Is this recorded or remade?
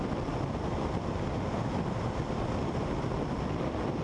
recorded